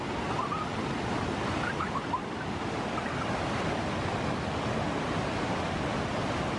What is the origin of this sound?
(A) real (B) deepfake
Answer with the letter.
A